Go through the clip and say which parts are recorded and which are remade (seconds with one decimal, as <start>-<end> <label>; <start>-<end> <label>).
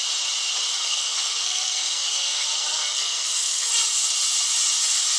0.0-0.7 recorded; 0.7-3.7 remade; 3.7-5.2 recorded